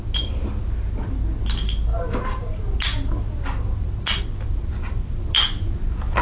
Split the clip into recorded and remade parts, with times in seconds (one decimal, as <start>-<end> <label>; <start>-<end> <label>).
0.0-6.2 recorded